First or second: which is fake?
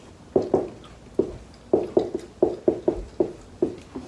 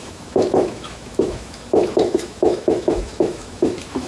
second